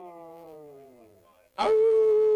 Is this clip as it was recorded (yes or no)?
no